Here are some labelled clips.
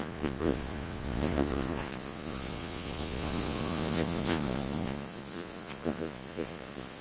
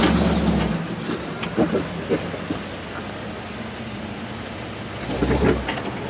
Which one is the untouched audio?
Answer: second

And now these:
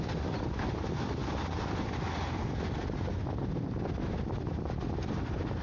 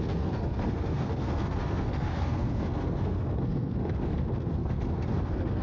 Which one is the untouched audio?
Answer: first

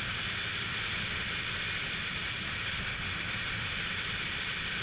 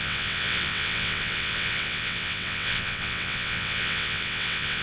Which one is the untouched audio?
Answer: first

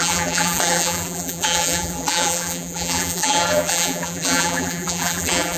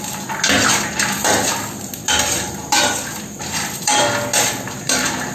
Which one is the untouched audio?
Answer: second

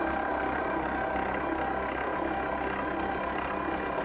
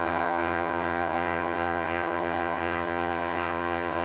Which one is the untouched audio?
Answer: first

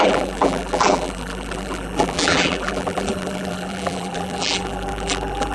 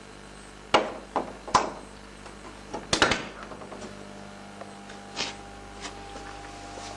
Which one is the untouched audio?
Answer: second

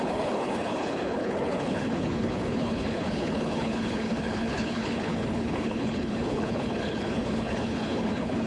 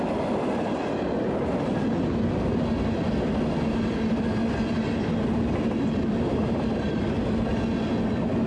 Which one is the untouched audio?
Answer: second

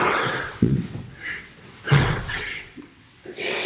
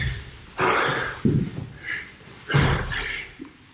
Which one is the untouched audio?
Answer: second